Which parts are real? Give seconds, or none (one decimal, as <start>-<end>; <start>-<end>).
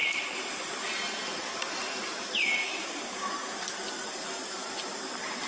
0.0-2.4; 3.3-5.5